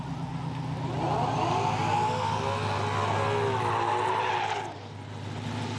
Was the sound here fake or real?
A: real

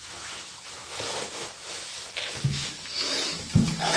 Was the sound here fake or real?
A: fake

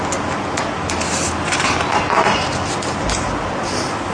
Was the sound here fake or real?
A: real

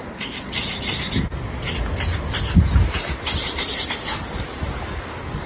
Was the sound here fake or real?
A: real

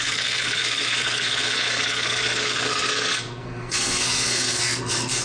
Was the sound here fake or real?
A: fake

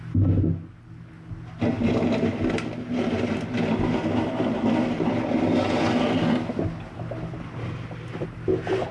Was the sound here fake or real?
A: real